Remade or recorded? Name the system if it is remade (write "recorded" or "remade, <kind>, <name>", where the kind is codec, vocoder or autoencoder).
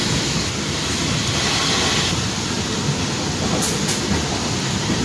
recorded